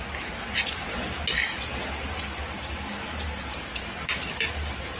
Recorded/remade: recorded